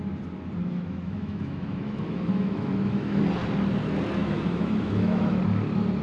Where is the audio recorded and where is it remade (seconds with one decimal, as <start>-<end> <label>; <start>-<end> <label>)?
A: 0.0-0.6 recorded; 0.6-3.2 remade; 3.2-4.2 recorded; 4.2-5.4 remade; 5.4-6.0 recorded